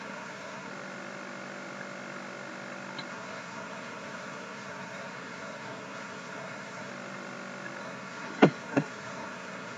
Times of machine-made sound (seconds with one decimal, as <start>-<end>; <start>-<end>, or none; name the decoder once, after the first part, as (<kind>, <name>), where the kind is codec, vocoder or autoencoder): 0.0-0.7 (codec, SNAC); 3.1-6.9; 7.8-9.8